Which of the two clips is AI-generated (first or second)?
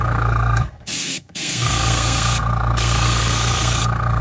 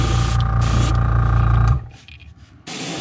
first